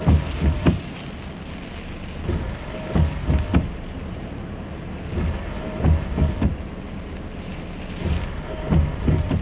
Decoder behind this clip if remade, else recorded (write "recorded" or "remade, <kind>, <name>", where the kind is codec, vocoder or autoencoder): recorded